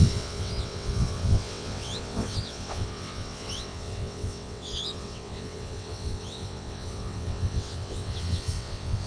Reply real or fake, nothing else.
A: fake